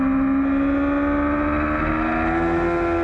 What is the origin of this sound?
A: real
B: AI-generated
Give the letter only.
A